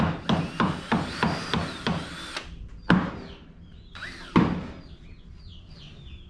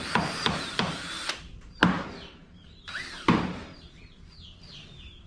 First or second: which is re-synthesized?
second